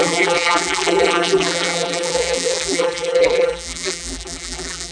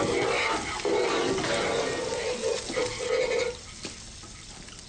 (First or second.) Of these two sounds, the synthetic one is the first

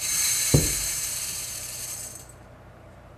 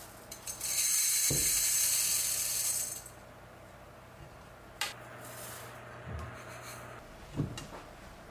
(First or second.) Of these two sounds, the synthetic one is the first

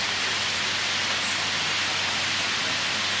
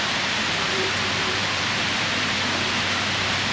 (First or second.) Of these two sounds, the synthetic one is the second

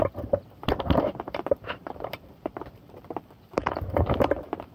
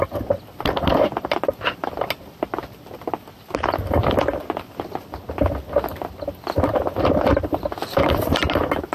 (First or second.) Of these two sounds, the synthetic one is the first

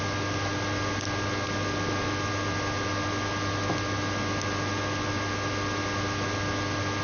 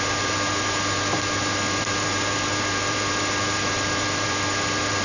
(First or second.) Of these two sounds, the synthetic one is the second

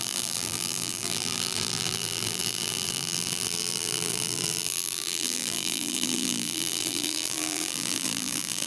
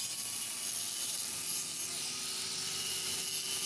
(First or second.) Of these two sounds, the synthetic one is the first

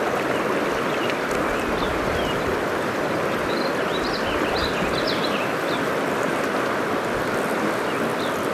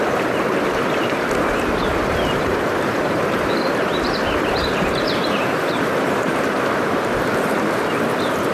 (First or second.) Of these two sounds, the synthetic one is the second